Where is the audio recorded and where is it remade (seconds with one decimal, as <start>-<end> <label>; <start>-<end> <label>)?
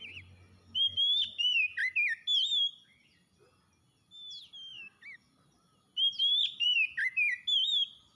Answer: 0.0-8.2 recorded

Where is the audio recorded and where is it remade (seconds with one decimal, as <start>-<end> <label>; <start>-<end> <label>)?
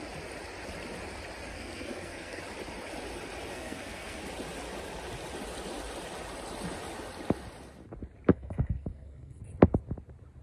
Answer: 0.0-1.5 recorded; 1.5-2.4 remade; 2.4-3.5 recorded; 3.5-4.2 remade; 4.2-8.3 recorded; 8.3-9.4 remade; 9.4-10.4 recorded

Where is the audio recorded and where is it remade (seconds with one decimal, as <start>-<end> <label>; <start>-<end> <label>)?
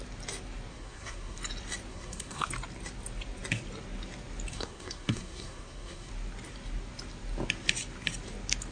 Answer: 0.0-0.7 recorded; 0.7-1.4 remade; 1.4-1.9 recorded; 1.9-2.5 remade; 2.5-4.5 recorded; 4.5-6.1 remade; 6.1-8.7 recorded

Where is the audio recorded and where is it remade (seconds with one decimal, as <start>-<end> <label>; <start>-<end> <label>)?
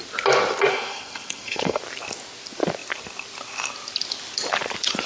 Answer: 0.0-0.7 recorded; 0.7-1.8 remade; 1.8-5.1 recorded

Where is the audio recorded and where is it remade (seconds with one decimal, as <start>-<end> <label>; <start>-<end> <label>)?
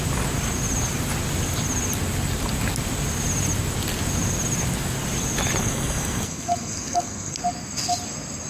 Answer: 0.0-5.6 recorded; 5.6-7.4 remade; 7.4-8.5 recorded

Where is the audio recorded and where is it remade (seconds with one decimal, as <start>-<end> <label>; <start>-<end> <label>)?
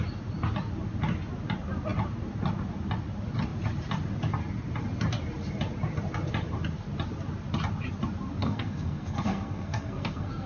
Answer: 0.0-8.4 recorded; 8.4-10.5 remade